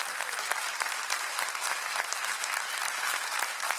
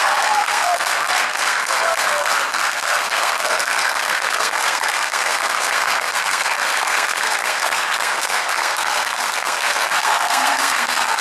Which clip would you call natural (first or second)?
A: first